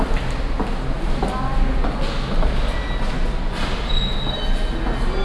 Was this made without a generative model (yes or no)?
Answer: yes